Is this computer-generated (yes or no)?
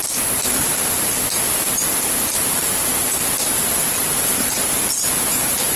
no